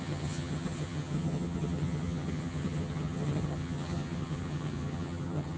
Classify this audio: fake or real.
fake